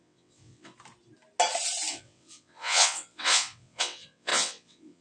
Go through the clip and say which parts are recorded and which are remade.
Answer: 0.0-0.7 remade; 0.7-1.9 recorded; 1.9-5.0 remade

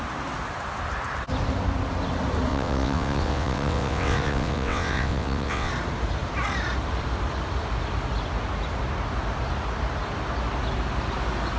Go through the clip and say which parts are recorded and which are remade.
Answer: 0.0-2.5 recorded; 2.5-5.7 remade; 5.7-11.6 recorded

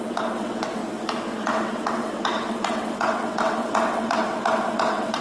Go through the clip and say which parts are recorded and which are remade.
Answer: 0.0-0.8 remade; 0.8-1.4 recorded; 1.4-5.2 remade

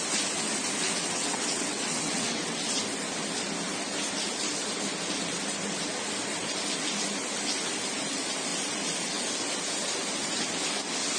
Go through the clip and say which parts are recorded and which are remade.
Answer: 0.0-1.0 recorded; 1.0-2.6 remade; 2.6-11.2 recorded